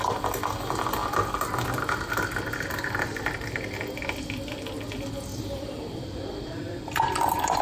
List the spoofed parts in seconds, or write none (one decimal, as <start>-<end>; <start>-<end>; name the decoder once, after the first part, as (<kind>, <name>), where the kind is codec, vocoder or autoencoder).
5.3-7.6 (vocoder, BigVGAN v2)